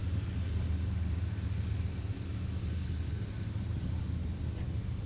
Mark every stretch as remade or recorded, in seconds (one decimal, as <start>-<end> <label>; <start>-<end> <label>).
0.0-5.1 recorded